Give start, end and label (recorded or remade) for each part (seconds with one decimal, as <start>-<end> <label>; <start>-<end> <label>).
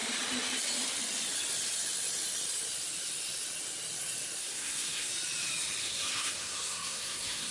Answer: 0.0-4.4 recorded; 4.4-5.1 remade; 5.1-5.8 recorded; 5.8-7.5 remade